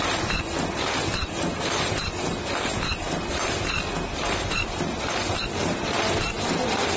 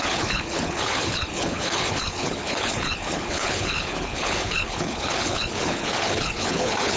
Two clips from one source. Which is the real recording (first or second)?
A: first